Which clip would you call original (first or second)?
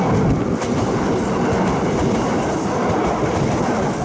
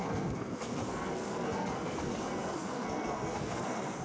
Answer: first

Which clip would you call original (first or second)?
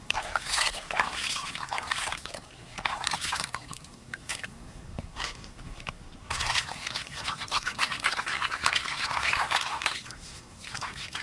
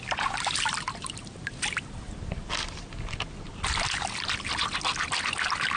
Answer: second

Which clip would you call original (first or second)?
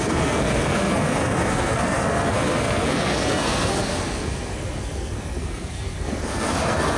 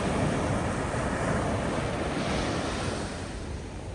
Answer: second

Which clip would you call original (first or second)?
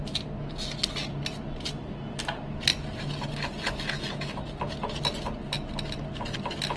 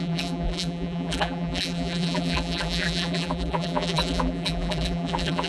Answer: first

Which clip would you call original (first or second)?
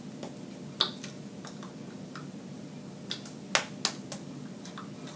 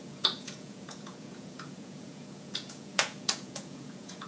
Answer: first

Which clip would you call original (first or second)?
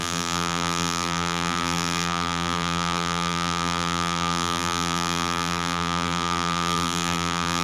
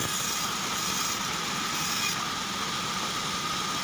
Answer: second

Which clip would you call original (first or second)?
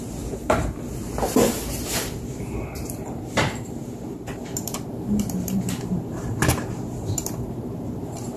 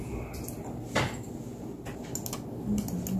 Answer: second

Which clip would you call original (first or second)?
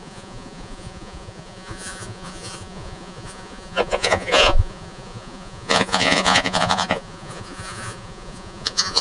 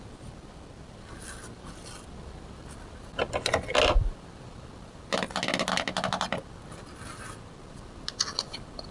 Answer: second